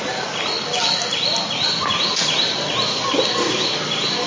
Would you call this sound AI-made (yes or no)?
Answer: no